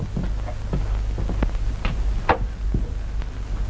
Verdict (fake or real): real